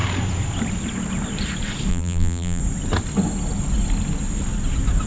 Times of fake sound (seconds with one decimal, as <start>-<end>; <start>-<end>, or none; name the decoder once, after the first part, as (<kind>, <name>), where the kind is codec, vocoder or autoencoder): 1.9-2.6 (vocoder, BigVGAN v2)

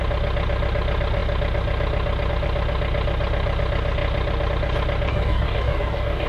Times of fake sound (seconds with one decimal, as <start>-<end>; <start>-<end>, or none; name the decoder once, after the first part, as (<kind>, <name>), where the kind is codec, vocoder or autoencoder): 5.1-6.3 (codec, DAC)

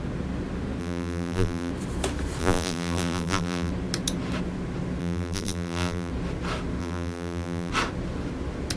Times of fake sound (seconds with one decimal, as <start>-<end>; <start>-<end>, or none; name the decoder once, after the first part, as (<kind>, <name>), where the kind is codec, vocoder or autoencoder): 0.8-1.7 (vocoder, BigVGAN v2); 2.4-3.7; 5.0-6.1; 6.8-7.7

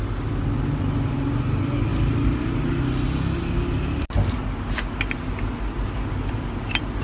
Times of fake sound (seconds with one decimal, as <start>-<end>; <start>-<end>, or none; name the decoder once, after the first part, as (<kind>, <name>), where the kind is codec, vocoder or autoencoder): none

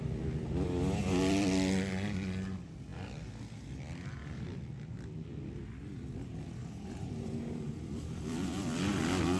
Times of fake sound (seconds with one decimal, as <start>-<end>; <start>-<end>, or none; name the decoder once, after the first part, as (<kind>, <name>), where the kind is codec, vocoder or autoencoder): 6.6-7.7 (vocoder, BigVGAN v2)

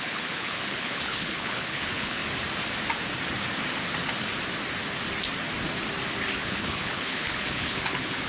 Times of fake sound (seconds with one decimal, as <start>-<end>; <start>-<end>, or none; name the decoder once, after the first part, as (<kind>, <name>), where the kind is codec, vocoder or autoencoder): 0.0-2.2 (codec, HILCodec); 6.4-8.3

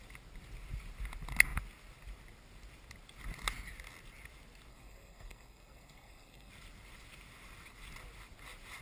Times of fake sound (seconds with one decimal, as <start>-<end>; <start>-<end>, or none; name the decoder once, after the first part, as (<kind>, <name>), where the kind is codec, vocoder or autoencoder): 4.7-6.5 (codec, SNAC)